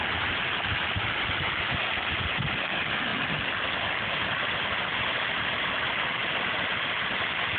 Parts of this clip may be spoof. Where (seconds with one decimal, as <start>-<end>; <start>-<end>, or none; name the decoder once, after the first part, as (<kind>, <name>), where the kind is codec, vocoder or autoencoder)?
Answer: none